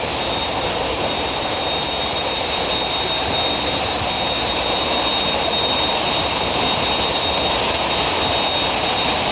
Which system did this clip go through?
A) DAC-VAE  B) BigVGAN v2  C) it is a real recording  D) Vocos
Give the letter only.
C